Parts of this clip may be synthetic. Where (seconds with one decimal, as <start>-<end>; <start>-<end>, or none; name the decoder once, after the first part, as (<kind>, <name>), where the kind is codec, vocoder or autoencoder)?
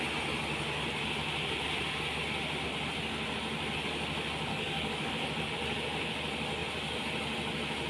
4.5-5.1 (codec, DAC)